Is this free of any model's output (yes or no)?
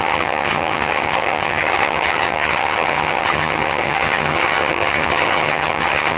no